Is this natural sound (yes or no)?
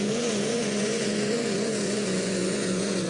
no